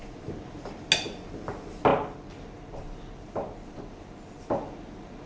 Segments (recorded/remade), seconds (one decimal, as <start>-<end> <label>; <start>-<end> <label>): 0.0-5.3 recorded